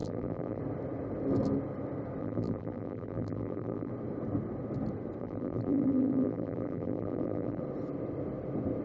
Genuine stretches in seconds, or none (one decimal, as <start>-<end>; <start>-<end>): 0.6-2.2; 3.9-5.2; 7.6-8.8